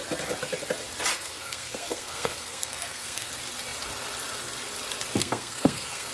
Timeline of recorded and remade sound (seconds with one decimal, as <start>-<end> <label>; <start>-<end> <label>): 0.0-1.1 recorded; 1.1-3.3 remade; 3.3-5.2 recorded; 5.2-6.1 remade